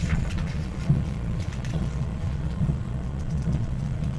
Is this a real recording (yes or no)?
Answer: no